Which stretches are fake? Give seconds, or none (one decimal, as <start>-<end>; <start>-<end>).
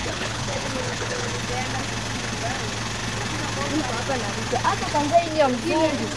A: 0.0-1.3